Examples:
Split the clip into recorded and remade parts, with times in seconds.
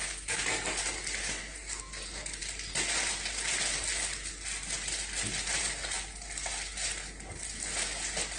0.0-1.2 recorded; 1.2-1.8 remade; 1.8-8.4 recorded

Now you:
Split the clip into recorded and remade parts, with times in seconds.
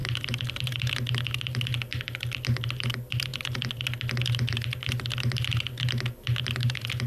0.0-7.1 recorded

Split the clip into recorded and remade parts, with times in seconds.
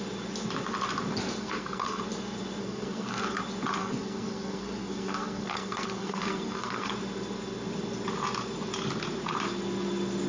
0.0-1.4 recorded; 1.4-2.0 remade; 2.0-2.6 recorded; 2.6-3.4 remade; 3.4-3.8 recorded; 3.8-6.9 remade; 6.9-10.3 recorded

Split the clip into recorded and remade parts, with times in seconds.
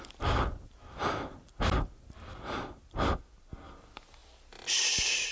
0.0-5.3 recorded